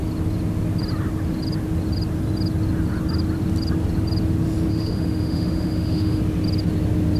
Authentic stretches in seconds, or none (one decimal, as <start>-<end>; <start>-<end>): 0.0-4.7; 6.2-7.2